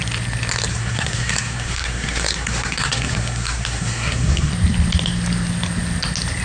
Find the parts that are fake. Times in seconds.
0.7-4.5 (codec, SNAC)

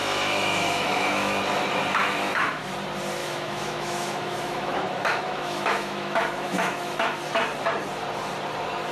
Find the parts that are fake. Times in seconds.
0.0-1.4 (autoencoder, DAC-VAE); 2.0-2.7; 3.2-7.2